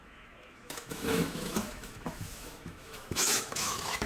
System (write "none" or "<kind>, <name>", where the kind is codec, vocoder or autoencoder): autoencoder, DAC-VAE